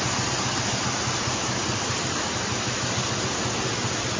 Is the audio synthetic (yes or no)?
no